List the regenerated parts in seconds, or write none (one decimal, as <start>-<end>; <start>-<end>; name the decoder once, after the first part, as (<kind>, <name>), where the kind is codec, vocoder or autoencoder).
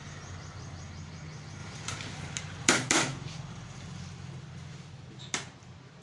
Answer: 1.6-2.7 (vocoder, BigVGAN v2)